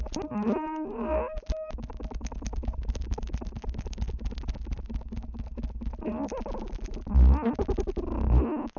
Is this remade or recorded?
recorded